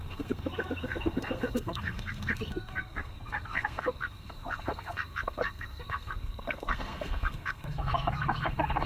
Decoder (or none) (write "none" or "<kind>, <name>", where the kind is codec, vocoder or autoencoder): codec, SNAC